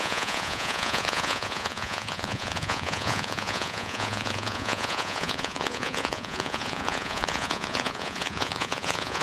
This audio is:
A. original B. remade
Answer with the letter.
B